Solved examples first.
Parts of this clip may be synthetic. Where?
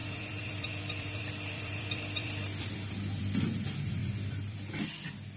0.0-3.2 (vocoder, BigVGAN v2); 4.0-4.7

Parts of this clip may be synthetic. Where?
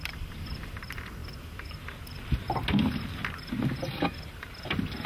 0.0-1.2 (vocoder, BigVGAN v2); 4.3-5.1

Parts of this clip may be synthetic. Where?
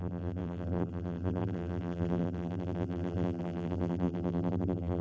0.0-5.0 (vocoder, BigVGAN v2)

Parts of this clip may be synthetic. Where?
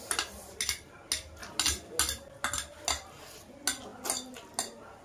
none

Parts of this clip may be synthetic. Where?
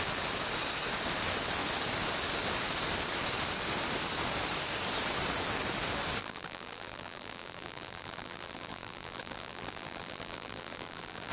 6.2-11.3 (vocoder, BigVGAN v2)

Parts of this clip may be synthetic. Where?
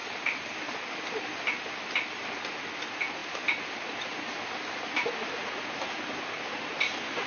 0.0-2.7 (vocoder, BigVGAN v2)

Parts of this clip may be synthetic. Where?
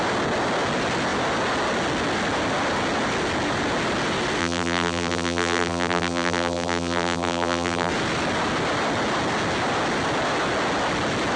4.4-7.9 (vocoder, BigVGAN v2)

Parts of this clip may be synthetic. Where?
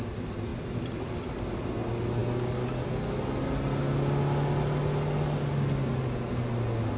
0.5-1.7 (vocoder, BigVGAN v2)